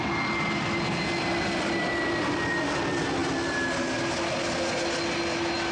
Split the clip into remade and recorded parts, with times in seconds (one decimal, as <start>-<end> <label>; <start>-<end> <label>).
0.0-5.7 recorded